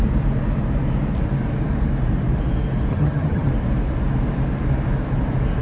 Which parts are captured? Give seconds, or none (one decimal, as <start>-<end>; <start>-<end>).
0.0-2.9; 3.5-5.6